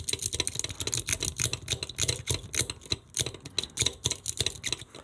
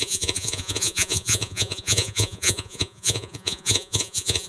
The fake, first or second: second